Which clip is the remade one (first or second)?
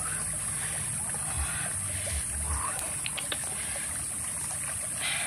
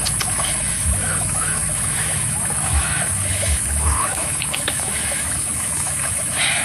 second